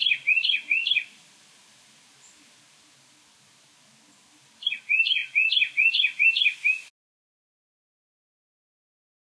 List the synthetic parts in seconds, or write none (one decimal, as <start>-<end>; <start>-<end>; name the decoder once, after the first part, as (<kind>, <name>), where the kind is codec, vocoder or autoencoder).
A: none

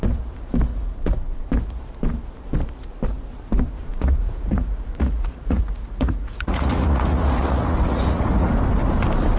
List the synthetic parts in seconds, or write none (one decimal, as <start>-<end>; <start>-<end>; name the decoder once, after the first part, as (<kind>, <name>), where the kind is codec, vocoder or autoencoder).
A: 0.7-1.5 (vocoder, Vocos); 3.8-8.5

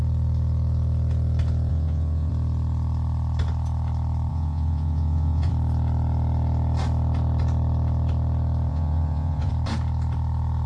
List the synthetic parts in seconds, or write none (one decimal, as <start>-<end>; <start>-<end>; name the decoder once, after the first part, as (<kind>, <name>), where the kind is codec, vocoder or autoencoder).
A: 1.7-2.3 (vocoder, Vocos); 4.3-5.5; 8.7-9.5